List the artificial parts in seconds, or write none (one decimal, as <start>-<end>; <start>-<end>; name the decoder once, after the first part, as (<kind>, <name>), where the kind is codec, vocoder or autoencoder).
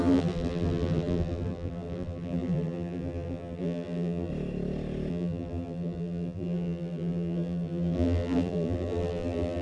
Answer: 0.0-4.3 (vocoder, BigVGAN v2); 5.1-9.6